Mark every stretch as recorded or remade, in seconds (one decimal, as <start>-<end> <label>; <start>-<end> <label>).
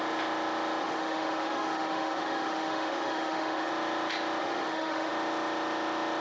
0.0-0.8 recorded; 0.8-3.7 remade; 3.7-4.4 recorded; 4.4-5.1 remade; 5.1-6.2 recorded